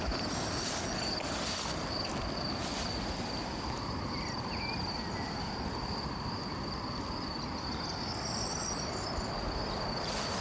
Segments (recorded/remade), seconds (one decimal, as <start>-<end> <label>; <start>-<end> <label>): 0.0-2.1 recorded; 2.1-4.0 remade; 4.0-8.5 recorded; 8.5-9.0 remade; 9.0-10.4 recorded